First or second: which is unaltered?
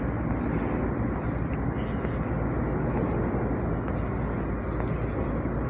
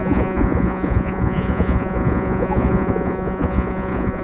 first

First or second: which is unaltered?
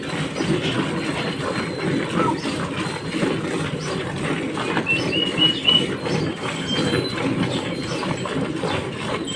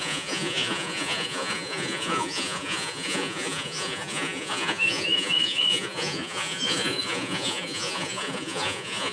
first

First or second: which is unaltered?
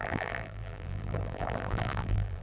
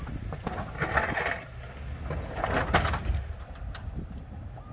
second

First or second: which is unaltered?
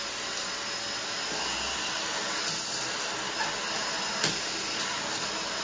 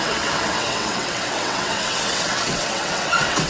first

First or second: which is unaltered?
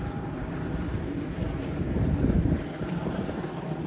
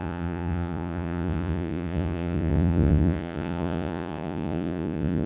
first